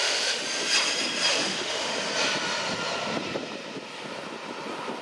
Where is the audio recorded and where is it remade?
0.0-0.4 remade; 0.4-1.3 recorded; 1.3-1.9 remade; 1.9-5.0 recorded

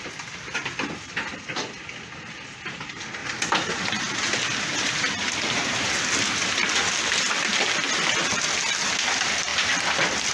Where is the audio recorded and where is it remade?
0.0-10.3 recorded

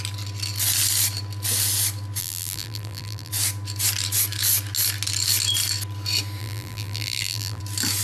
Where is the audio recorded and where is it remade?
0.0-2.2 recorded; 2.2-3.3 remade; 3.3-6.4 recorded; 6.4-7.6 remade; 7.6-8.0 recorded

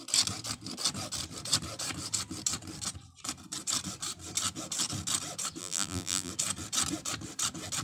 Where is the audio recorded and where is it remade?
0.0-5.6 recorded; 5.6-6.3 remade; 6.3-7.8 recorded

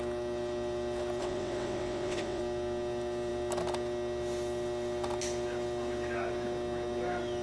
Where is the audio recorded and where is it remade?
0.0-1.2 recorded; 1.2-2.4 remade; 2.4-7.4 recorded

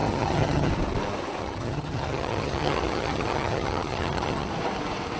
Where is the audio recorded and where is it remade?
0.0-0.7 remade; 0.7-1.4 recorded; 1.4-4.5 remade; 4.5-5.2 recorded

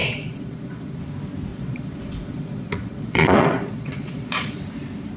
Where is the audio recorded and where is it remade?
0.0-1.0 remade; 1.0-1.5 recorded; 1.5-4.6 remade; 4.6-5.2 recorded

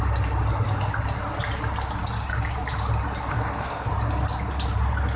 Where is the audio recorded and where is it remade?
0.0-3.3 recorded; 3.3-3.9 remade; 3.9-5.2 recorded